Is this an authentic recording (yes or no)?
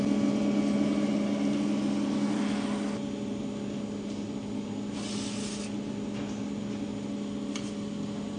yes